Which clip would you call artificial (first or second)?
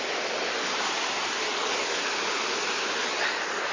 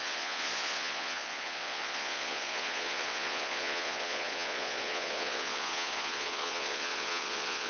second